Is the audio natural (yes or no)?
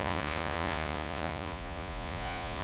no